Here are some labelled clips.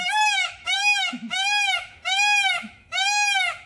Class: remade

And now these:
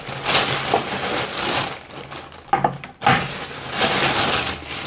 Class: recorded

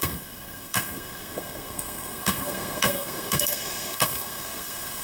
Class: remade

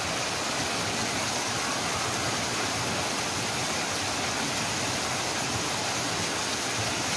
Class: recorded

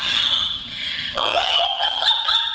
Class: remade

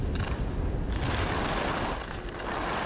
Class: recorded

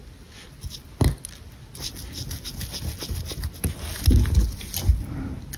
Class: recorded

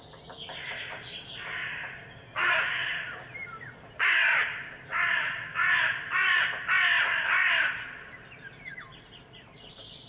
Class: recorded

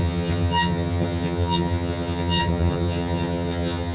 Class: remade